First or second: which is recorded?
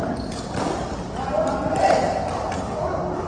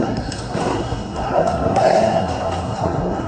first